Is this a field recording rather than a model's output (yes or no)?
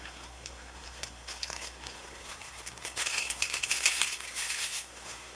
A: no